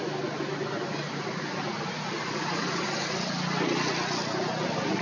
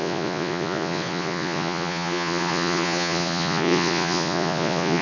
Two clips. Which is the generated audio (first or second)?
second